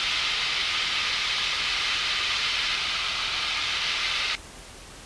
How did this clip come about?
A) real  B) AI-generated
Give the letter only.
A